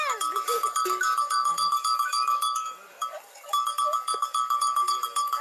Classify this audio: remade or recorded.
remade